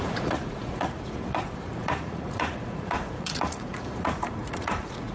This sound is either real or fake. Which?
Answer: fake